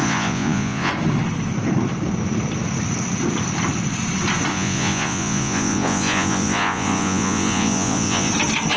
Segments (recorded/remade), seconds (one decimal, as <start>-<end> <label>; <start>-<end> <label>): 0.0-0.9 remade; 0.9-4.5 recorded; 4.5-8.3 remade; 8.3-8.8 recorded